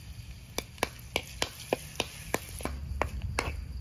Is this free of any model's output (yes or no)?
yes